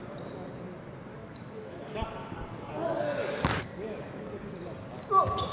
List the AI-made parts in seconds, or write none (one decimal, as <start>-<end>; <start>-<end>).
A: 1.1-4.4